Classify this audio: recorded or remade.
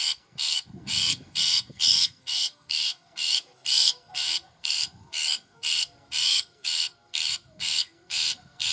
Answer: remade